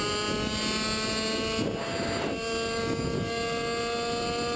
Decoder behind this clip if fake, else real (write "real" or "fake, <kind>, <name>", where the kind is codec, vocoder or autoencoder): real